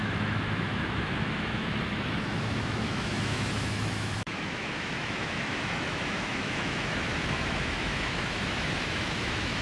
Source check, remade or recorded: remade